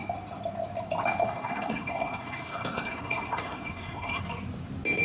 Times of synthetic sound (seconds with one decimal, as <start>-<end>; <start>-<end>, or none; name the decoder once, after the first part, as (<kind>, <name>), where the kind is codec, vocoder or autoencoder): 1.2-4.2 (codec, SNAC)